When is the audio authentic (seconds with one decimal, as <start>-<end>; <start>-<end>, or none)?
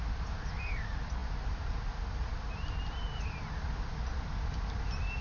0.0-5.2